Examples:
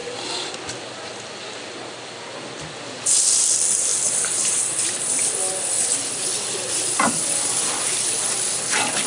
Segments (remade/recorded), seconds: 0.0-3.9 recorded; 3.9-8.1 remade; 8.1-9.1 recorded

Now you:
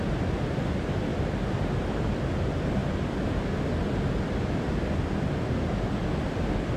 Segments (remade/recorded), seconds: 0.0-1.1 remade; 1.1-1.8 recorded; 1.8-2.8 remade; 2.8-6.8 recorded

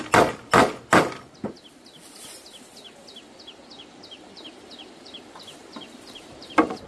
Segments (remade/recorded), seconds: 0.0-0.6 remade; 0.6-3.7 recorded; 3.7-6.9 remade

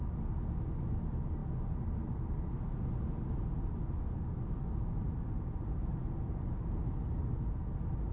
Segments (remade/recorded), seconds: 0.0-8.1 recorded

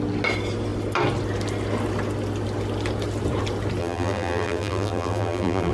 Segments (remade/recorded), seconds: 0.0-3.8 recorded; 3.8-5.7 remade